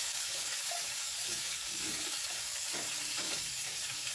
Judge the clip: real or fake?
fake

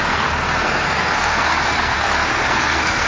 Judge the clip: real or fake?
fake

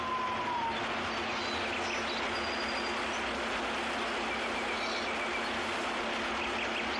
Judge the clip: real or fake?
real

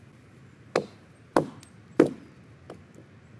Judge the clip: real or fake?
real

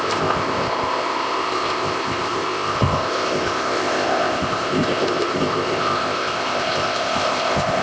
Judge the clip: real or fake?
fake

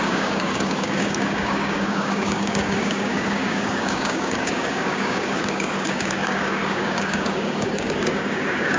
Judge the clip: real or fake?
fake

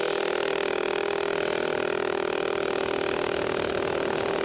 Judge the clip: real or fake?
real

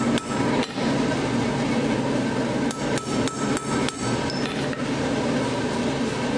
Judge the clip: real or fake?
real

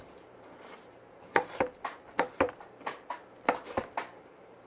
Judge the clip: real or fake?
fake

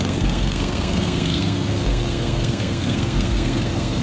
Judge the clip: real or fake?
fake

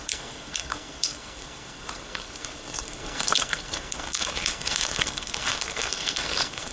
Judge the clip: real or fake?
fake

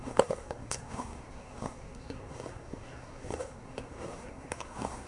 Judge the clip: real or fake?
fake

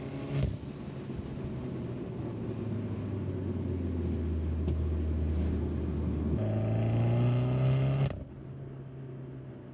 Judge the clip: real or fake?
real